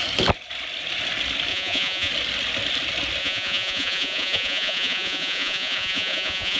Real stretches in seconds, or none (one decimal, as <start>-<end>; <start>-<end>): 0.0-1.5; 2.1-3.2